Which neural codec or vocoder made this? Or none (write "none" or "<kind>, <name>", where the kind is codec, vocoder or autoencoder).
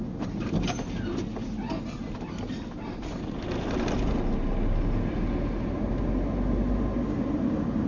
none